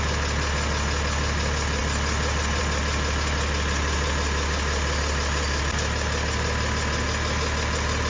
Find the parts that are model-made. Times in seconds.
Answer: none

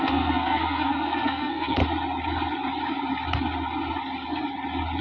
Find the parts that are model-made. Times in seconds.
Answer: 0.0-1.8 (codec, SNAC)

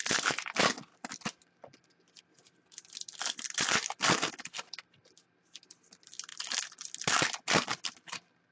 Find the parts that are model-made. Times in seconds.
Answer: none

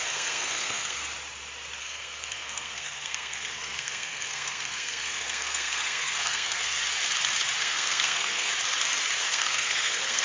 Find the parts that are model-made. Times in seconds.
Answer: 0.0-1.0 (codec, SNAC); 1.8-6.8; 7.6-8.5; 9.2-10.2

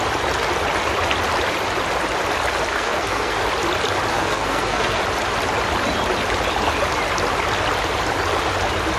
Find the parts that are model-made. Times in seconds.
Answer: 2.7-3.4 (codec, SNAC); 4.1-5.0

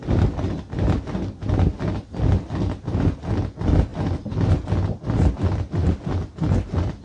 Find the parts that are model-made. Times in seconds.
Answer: none